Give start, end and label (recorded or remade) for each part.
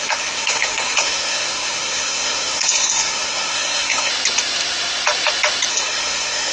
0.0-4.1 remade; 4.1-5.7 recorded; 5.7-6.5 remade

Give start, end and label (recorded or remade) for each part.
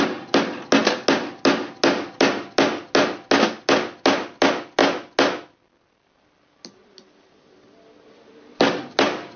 0.0-9.4 recorded